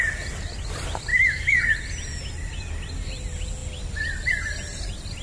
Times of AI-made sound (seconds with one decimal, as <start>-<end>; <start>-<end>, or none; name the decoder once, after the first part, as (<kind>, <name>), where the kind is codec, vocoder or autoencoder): 1.1-1.6 (autoencoder, DAC-VAE)